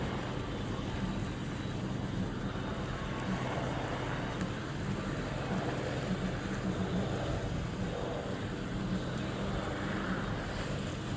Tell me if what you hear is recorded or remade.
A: recorded